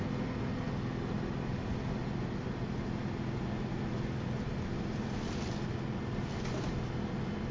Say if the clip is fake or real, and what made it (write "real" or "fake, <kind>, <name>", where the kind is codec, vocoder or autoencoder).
real